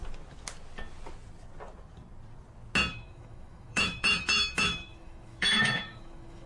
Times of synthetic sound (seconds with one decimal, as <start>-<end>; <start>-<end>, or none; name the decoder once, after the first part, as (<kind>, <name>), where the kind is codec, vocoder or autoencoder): 2.9-6.5 (autoencoder, DAC-VAE)